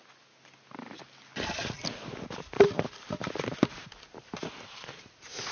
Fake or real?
real